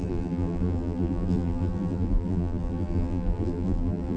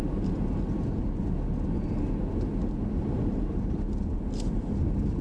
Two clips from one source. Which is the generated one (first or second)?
first